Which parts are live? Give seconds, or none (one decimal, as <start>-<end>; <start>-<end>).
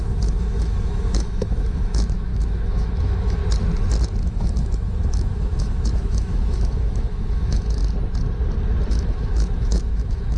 3.4-4.2; 7.8-8.9